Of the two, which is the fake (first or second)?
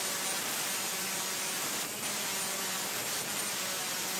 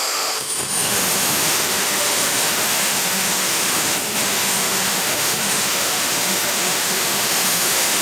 second